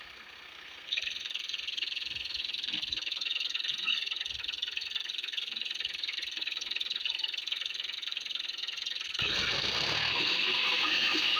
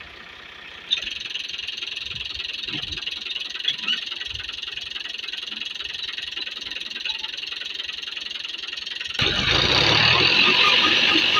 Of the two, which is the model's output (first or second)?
first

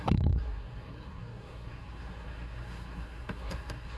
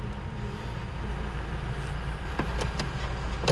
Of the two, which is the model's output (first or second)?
first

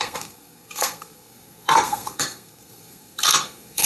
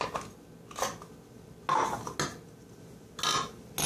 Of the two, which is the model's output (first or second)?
first